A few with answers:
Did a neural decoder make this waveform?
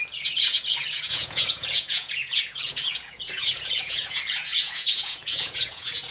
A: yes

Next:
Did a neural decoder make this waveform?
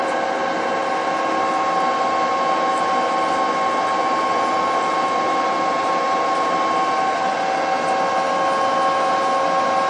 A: no